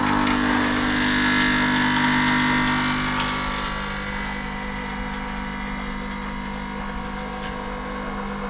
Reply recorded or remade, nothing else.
recorded